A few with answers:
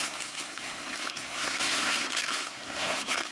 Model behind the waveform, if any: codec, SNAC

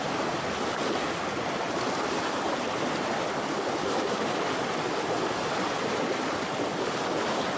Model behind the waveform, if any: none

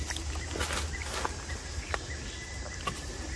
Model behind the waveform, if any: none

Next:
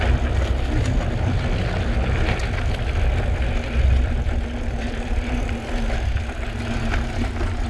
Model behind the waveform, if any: none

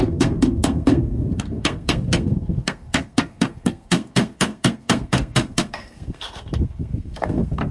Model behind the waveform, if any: codec, SNAC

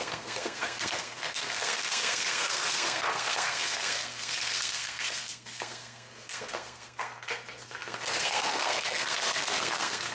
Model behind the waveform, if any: codec, SNAC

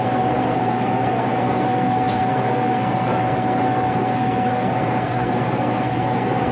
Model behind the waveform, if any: codec, SNAC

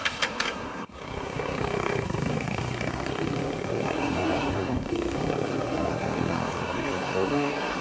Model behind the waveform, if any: codec, SNAC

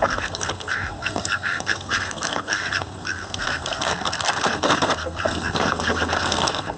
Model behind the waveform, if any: codec, SNAC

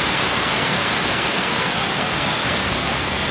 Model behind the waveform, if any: codec, SNAC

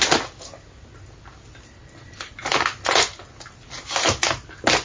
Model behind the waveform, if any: none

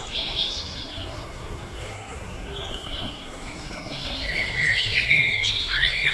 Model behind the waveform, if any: codec, SNAC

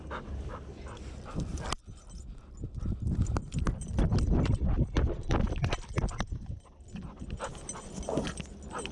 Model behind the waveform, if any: none